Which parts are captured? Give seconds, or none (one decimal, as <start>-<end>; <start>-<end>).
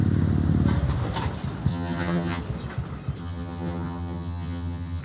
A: 0.0-1.7; 2.4-3.2